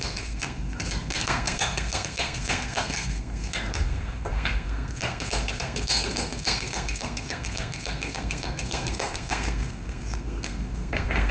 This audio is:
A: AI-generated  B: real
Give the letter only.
A